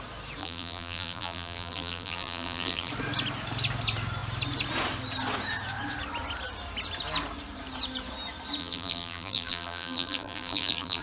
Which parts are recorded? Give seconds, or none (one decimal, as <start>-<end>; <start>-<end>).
0.0-0.4; 2.9-8.6